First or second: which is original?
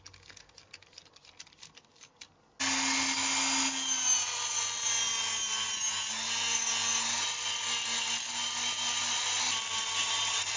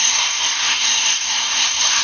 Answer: first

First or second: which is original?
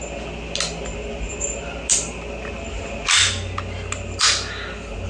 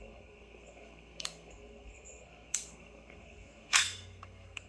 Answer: first